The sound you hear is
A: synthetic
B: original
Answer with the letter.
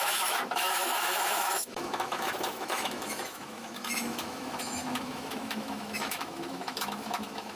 A